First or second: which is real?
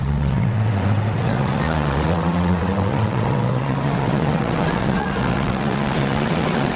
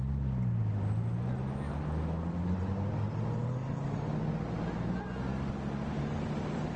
second